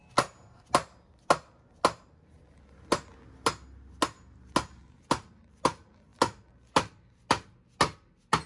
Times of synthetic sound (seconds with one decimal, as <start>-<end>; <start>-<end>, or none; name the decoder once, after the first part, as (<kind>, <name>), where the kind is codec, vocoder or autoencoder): none